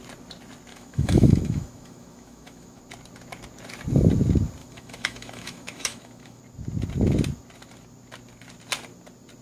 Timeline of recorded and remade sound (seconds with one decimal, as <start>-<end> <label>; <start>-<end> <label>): 0.0-0.7 recorded; 0.7-2.8 remade; 2.8-4.6 recorded; 4.6-6.4 remade; 6.4-9.4 recorded